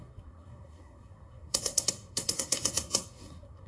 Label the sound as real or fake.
fake